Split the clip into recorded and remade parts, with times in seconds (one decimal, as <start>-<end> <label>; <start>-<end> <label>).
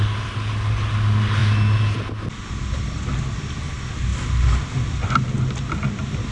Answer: 0.0-6.3 recorded